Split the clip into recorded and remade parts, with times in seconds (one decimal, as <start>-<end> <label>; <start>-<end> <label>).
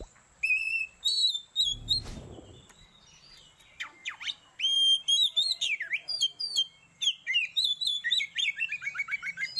0.0-0.6 recorded; 0.6-1.3 remade; 1.3-4.0 recorded; 4.0-6.2 remade; 6.2-7.4 recorded; 7.4-9.6 remade